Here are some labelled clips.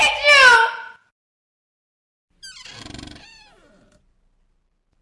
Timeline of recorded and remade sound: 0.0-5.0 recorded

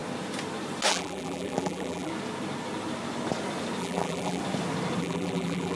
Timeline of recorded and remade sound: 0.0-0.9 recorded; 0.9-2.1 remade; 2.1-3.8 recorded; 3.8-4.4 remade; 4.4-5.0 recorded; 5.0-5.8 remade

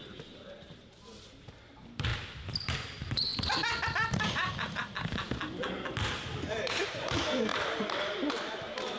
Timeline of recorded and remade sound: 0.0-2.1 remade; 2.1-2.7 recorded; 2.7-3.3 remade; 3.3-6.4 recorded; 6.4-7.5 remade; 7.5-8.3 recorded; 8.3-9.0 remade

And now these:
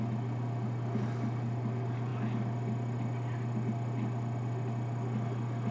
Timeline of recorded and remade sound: 0.0-5.7 recorded

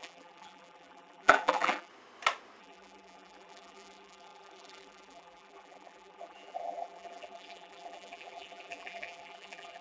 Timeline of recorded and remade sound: 0.0-1.9 remade; 1.9-2.6 recorded; 2.6-9.8 remade